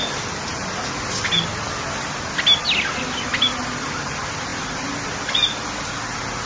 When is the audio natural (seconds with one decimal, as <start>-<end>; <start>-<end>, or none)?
0.0-6.5